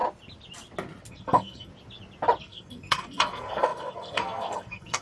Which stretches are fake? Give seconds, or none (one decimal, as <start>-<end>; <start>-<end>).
1.1-1.7; 2.4-5.0

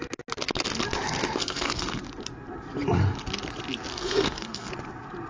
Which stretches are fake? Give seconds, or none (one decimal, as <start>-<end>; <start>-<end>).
1.4-2.0; 3.9-4.7

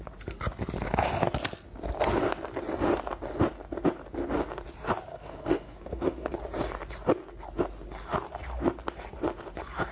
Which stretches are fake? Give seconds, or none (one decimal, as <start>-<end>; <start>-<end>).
5.1-6.3

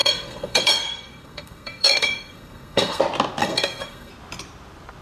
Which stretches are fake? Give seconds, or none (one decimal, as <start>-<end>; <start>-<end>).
0.0-3.0; 3.4-4.1

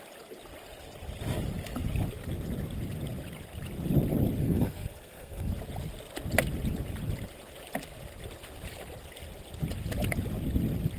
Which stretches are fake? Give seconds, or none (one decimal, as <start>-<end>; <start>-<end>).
4.4-5.5

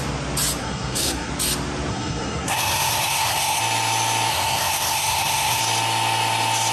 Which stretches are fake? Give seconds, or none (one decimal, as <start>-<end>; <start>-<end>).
0.6-1.3; 1.9-3.6; 4.3-5.6

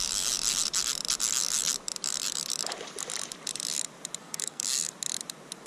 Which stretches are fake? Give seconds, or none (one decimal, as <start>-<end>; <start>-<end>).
4.2-4.9